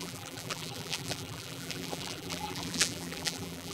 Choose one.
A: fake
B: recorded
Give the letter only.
A